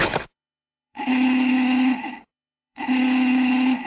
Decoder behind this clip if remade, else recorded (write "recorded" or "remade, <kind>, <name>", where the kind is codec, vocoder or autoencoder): remade, codec, HILCodec